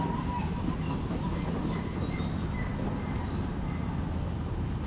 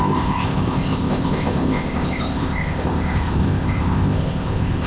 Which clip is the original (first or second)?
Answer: first